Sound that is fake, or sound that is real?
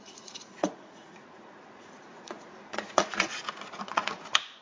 fake